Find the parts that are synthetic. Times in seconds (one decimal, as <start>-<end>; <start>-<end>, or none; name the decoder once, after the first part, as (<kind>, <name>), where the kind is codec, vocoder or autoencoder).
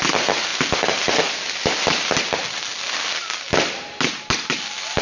none